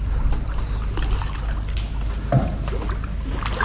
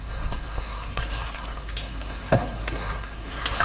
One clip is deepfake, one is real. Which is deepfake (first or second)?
second